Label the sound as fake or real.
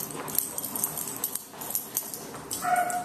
real